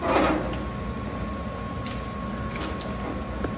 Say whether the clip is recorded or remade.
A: recorded